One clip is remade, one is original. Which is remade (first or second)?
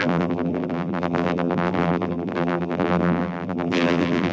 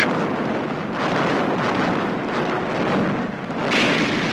first